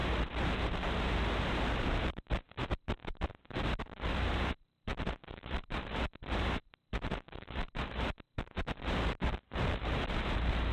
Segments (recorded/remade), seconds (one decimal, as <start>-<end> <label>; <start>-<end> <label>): 0.0-10.7 remade